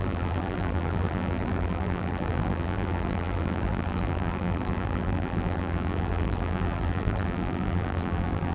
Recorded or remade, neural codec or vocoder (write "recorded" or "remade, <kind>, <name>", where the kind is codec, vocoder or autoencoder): remade, vocoder, BigVGAN v2